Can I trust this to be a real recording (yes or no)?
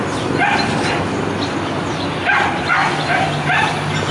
yes